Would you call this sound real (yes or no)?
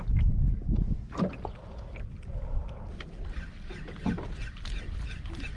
yes